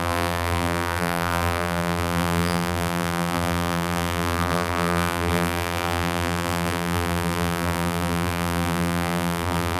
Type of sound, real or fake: fake